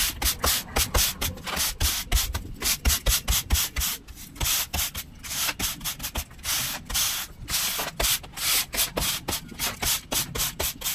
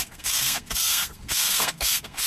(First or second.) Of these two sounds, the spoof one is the second